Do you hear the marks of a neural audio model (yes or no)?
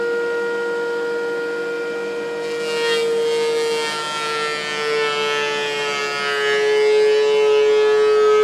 no